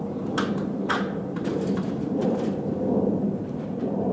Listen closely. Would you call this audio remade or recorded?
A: remade